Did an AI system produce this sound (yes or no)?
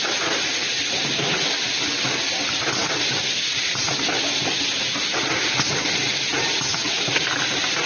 no